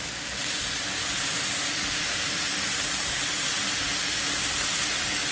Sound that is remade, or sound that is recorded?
recorded